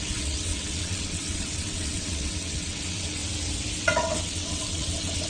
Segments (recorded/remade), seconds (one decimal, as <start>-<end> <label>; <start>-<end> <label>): 0.0-3.2 remade; 3.2-3.8 recorded; 3.8-5.3 remade